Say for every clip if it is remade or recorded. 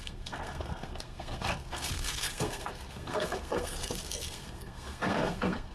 remade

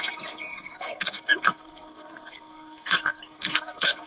remade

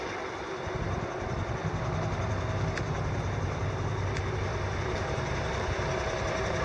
recorded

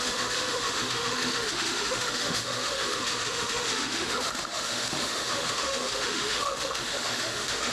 remade